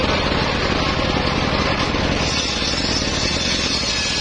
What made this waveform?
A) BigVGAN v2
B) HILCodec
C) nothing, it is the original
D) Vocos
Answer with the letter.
C